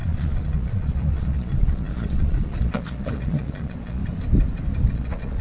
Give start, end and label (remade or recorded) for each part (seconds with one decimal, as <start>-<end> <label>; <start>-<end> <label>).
0.0-4.0 remade; 4.0-4.9 recorded; 4.9-5.4 remade

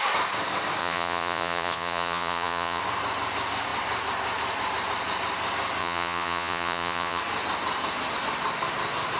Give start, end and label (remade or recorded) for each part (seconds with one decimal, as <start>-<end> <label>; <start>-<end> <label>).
0.0-0.8 recorded; 0.8-2.8 remade; 2.8-5.8 recorded; 5.8-7.2 remade; 7.2-9.2 recorded

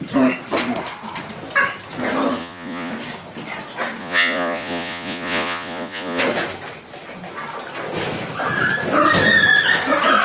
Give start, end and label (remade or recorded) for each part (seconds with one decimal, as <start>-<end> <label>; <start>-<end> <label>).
0.0-2.4 recorded; 2.4-2.9 remade; 2.9-4.0 recorded; 4.0-6.2 remade; 6.2-10.2 recorded

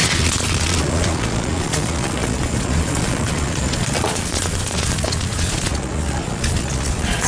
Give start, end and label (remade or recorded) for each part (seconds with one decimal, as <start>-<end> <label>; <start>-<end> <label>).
0.0-7.3 remade

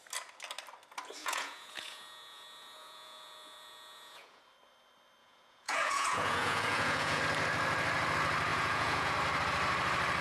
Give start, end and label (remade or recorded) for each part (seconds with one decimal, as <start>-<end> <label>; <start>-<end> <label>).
0.0-1.2 recorded; 1.2-4.4 remade; 4.4-5.2 recorded; 5.2-7.2 remade; 7.2-8.5 recorded; 8.5-9.1 remade; 9.1-10.2 recorded